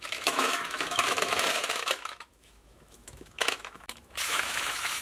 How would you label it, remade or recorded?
remade